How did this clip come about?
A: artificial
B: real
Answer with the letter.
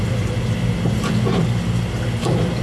B